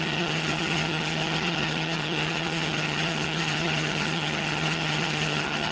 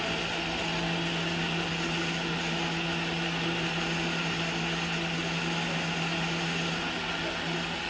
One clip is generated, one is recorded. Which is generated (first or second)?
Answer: first